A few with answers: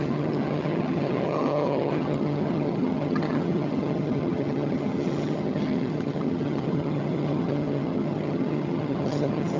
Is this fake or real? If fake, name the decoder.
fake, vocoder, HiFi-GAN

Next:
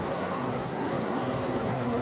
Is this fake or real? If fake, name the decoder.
fake, codec, SNAC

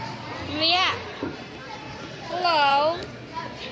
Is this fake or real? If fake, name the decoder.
fake, vocoder, BigVGAN v2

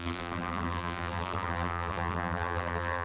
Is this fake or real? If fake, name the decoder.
fake, vocoder, BigVGAN v2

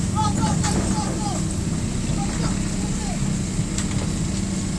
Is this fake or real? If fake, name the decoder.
real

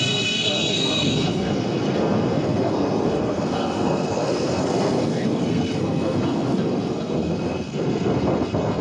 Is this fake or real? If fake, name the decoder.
fake, codec, SNAC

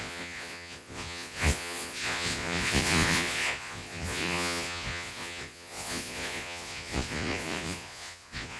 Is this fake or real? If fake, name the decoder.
fake, vocoder, Vocos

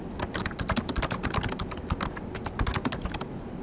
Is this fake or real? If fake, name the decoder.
real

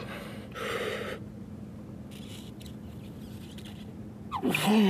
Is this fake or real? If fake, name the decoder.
real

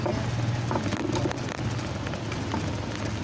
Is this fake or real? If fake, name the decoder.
real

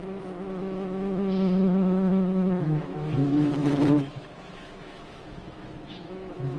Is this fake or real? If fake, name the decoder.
fake, autoencoder, DAC-VAE